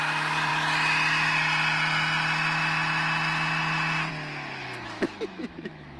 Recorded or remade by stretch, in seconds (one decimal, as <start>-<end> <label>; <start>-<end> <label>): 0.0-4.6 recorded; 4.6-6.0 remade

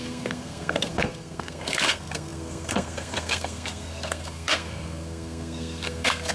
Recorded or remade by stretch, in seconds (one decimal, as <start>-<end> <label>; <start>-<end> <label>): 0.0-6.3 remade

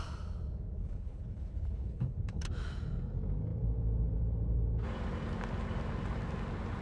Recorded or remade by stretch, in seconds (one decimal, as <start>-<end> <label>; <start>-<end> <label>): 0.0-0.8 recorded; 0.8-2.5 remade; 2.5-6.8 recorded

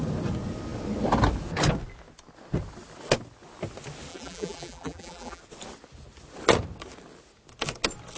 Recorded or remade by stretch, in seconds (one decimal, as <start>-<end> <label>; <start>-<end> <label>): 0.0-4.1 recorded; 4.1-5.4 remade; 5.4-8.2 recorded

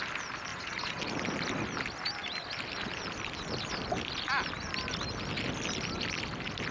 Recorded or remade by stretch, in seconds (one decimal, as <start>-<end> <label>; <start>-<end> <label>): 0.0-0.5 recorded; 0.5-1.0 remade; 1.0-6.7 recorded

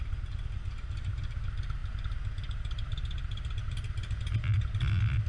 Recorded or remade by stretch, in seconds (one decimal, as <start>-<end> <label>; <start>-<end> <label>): 0.0-5.3 recorded